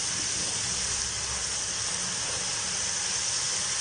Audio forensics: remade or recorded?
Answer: recorded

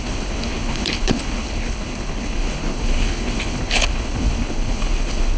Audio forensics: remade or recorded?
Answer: remade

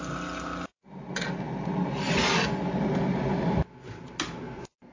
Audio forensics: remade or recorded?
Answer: recorded